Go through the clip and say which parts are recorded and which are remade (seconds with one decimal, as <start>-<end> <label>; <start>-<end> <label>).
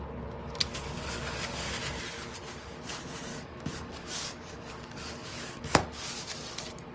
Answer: 0.0-0.7 recorded; 0.7-1.8 remade; 1.8-3.3 recorded; 3.3-5.6 remade; 5.6-6.9 recorded